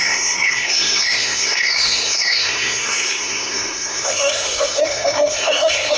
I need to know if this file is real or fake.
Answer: fake